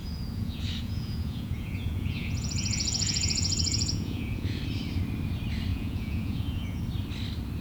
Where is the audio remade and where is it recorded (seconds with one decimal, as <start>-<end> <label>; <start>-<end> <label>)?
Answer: 0.0-4.6 remade; 4.6-5.7 recorded; 5.7-6.8 remade; 6.8-7.6 recorded

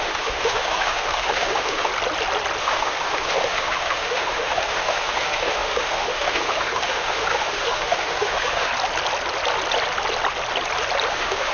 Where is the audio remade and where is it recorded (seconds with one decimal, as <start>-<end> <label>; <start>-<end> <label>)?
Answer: 0.0-1.9 remade; 1.9-2.6 recorded; 2.6-8.7 remade; 8.7-11.1 recorded; 11.1-11.5 remade

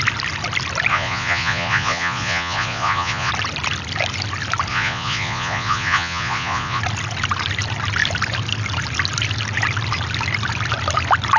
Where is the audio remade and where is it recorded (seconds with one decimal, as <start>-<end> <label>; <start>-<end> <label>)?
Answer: 0.0-0.9 recorded; 0.9-3.3 remade; 3.3-4.7 recorded; 4.7-6.8 remade; 6.8-11.4 recorded

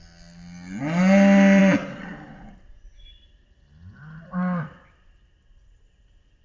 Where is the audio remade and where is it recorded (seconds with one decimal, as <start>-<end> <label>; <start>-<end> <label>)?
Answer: 0.0-6.4 recorded

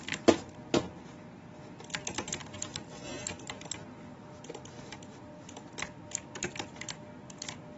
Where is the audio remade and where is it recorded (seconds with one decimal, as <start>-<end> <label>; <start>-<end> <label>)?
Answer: 0.0-7.8 recorded